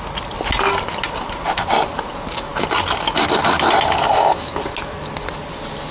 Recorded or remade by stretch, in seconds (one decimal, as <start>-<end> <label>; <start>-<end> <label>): 0.0-5.9 recorded